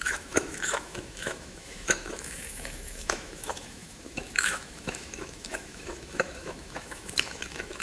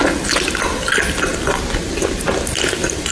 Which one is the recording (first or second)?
second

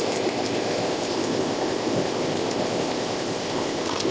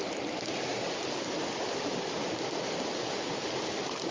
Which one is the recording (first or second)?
second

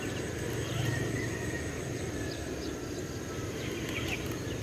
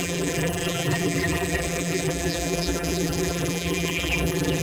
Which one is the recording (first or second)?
first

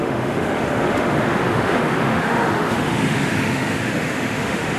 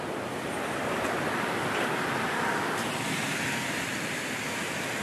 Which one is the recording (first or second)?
second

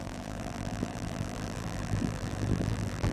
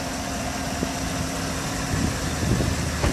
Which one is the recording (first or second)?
second